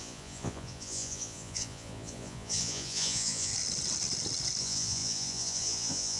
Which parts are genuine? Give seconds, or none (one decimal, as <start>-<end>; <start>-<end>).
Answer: 3.5-4.6